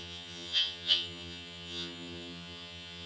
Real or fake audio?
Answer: fake